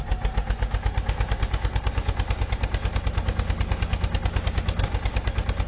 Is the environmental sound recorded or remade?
recorded